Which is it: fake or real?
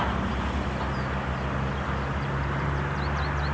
real